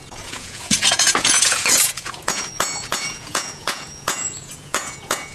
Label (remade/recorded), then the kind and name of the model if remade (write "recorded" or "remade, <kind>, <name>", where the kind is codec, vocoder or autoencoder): remade, vocoder, Vocos